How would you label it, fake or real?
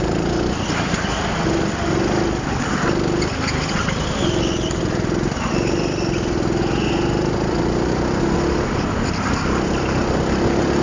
real